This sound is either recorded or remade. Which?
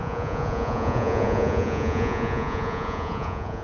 remade